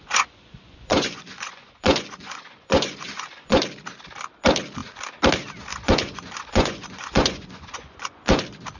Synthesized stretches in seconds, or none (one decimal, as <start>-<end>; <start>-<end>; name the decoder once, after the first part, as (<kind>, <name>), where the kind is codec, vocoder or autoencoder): 0.0-3.6 (vocoder, Vocos); 5.7-8.4